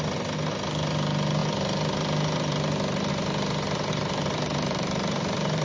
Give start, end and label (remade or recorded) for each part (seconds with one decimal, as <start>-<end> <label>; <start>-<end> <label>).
0.0-4.5 recorded; 4.5-5.6 remade